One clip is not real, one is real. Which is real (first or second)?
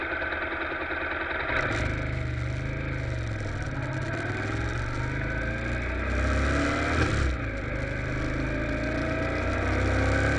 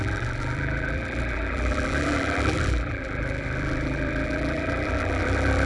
first